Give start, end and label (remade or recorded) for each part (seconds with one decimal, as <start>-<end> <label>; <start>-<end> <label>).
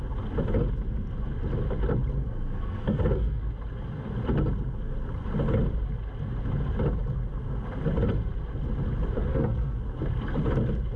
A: 0.0-2.2 recorded; 2.2-3.5 remade; 3.5-9.3 recorded; 9.3-9.8 remade; 9.8-11.0 recorded